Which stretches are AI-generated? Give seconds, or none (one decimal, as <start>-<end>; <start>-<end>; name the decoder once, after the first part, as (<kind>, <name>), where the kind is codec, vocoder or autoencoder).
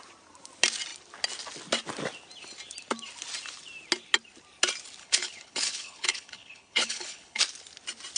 5.0-7.4 (codec, HILCodec)